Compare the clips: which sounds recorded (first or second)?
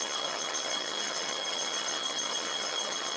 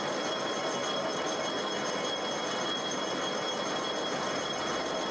second